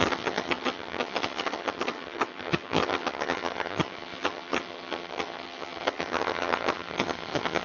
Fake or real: fake